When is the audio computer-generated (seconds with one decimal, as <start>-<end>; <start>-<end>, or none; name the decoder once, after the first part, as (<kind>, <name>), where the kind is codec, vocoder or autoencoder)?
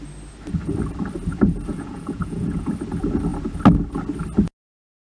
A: 1.7-2.7 (vocoder, Vocos)